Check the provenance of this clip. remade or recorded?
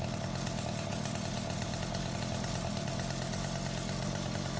recorded